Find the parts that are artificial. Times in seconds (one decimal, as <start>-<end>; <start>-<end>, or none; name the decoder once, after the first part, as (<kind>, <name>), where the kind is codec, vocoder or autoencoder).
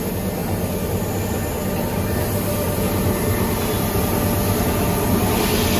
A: none